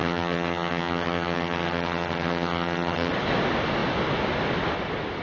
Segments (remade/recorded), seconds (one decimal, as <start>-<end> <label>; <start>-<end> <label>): 0.0-3.1 remade; 3.1-5.2 recorded

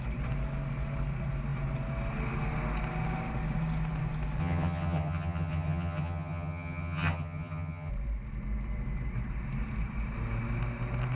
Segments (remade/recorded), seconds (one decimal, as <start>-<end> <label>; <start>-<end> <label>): 0.0-4.4 recorded; 4.4-7.9 remade; 7.9-11.2 recorded